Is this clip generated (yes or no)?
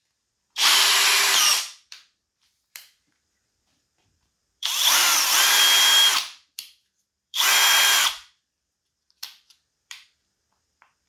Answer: yes